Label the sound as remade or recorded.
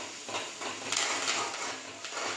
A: recorded